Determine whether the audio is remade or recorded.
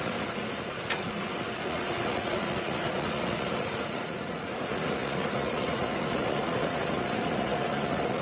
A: remade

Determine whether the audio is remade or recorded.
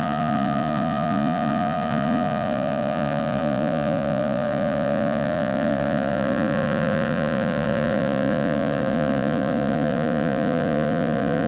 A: remade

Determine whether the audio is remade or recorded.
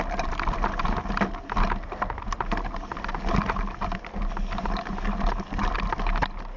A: recorded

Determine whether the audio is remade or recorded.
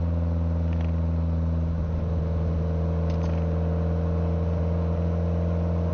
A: recorded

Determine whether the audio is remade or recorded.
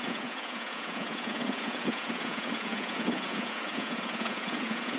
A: remade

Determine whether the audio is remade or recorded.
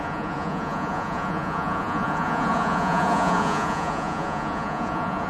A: remade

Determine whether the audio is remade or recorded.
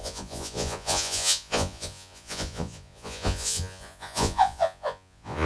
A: remade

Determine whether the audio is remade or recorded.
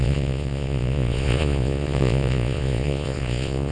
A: remade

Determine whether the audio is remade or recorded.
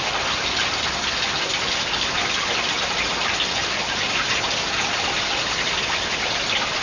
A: recorded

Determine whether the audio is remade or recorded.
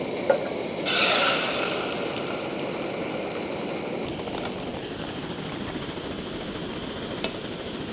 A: recorded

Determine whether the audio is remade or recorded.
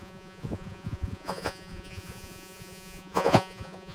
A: remade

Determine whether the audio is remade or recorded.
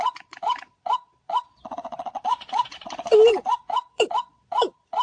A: remade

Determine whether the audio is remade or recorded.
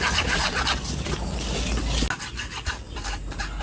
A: recorded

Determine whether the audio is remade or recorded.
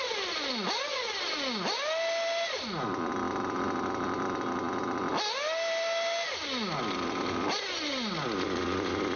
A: recorded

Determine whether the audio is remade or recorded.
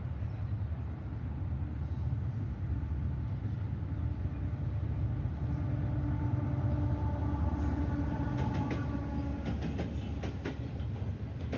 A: recorded